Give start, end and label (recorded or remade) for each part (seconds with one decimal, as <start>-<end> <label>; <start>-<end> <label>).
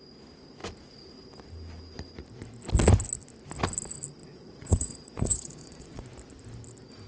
0.0-4.2 recorded; 4.2-6.0 remade; 6.0-7.1 recorded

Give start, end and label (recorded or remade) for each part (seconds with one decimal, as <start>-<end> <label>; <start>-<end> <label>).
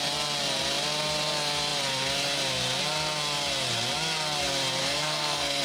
0.0-4.8 recorded; 4.8-5.6 remade